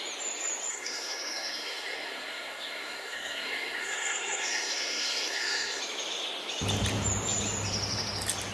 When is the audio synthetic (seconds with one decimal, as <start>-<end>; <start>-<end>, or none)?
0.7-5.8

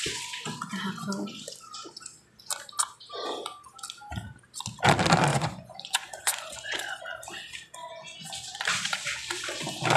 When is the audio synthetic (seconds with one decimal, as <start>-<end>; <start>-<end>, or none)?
5.3-7.0; 7.8-8.3

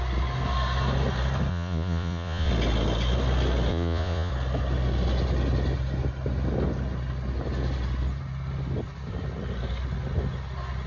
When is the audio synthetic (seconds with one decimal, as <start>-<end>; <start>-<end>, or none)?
1.5-2.5; 3.7-4.3